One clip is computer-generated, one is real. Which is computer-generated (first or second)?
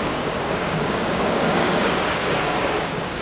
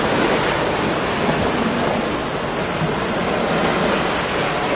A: first